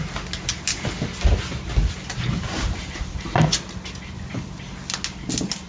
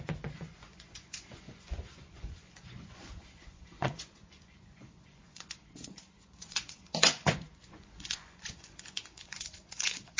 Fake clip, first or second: second